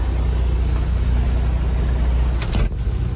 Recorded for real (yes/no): yes